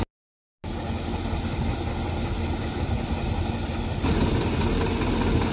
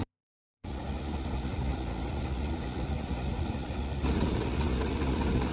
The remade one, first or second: second